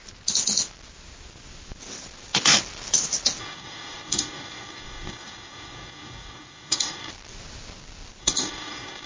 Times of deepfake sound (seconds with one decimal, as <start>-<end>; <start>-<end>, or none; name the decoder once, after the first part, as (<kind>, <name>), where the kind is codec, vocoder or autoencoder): 3.4-7.1 (codec, DAC); 8.2-9.1